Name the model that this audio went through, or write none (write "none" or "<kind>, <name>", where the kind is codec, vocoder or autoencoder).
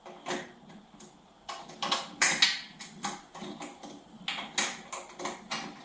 none